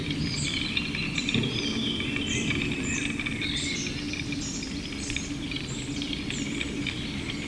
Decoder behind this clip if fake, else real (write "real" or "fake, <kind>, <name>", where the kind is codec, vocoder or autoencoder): real